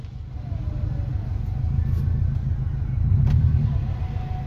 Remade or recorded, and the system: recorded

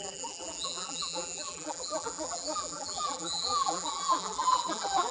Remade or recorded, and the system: remade, vocoder, BigVGAN v2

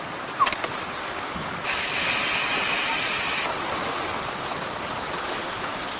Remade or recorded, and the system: recorded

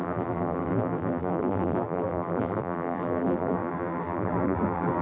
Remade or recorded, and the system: remade, vocoder, BigVGAN v2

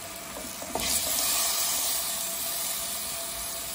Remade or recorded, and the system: recorded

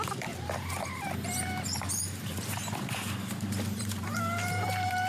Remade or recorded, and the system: remade, vocoder, BigVGAN v2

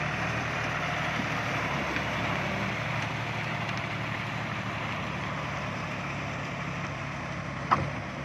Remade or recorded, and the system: remade, vocoder, BigVGAN v2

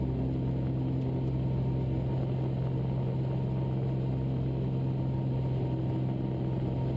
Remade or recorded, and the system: recorded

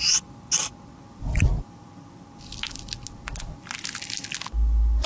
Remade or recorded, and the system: recorded